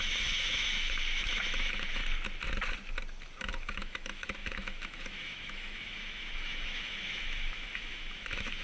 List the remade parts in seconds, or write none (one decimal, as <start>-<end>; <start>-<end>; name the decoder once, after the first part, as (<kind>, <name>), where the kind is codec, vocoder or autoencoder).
0.0-2.0 (autoencoder, DAC-VAE); 3.4-8.6